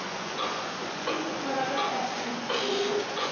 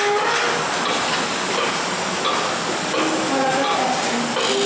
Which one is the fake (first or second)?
first